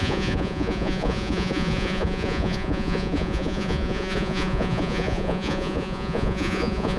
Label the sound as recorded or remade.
remade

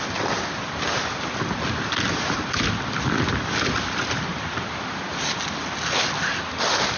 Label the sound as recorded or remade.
recorded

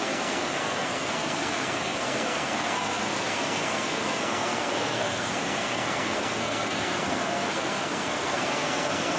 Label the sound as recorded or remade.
remade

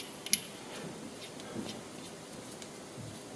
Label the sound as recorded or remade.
recorded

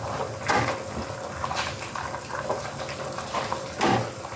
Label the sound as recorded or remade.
recorded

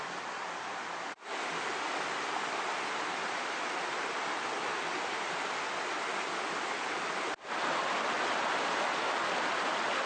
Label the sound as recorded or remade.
recorded